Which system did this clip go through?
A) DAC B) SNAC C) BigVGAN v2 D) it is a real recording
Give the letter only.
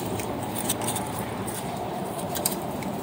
C